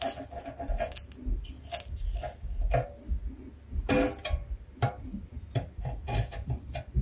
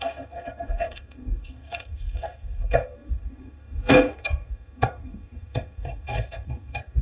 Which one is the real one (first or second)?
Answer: first